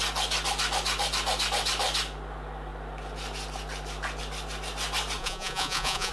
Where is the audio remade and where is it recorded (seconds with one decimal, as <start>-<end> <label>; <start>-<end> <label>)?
0.0-5.2 recorded; 5.2-6.1 remade